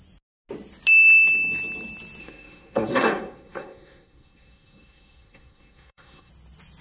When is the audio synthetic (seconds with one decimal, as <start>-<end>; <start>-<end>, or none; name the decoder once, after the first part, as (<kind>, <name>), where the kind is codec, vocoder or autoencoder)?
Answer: 2.2-6.3 (codec, SNAC)